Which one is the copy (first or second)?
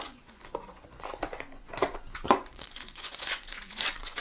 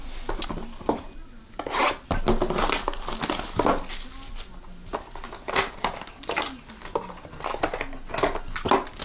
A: first